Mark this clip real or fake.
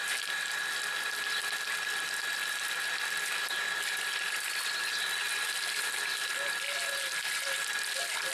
real